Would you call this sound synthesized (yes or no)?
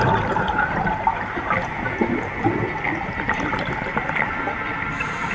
yes